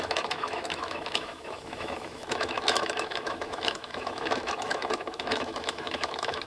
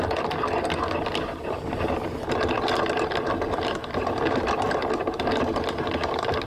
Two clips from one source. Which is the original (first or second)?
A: second